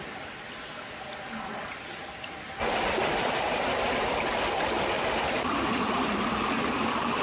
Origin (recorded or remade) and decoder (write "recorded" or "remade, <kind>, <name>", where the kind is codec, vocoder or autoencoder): recorded